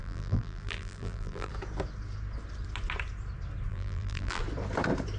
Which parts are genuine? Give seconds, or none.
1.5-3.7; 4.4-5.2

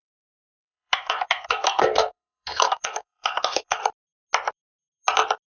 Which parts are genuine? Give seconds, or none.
3.8-5.5

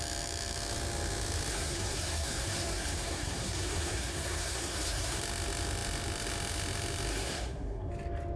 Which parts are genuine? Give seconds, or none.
0.0-1.5; 5.2-7.1; 7.9-8.4